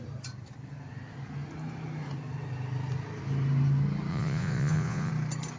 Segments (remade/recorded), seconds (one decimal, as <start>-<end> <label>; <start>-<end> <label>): 0.0-4.1 recorded; 4.1-5.1 remade; 5.1-5.6 recorded